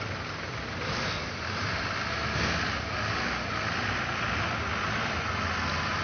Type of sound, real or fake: real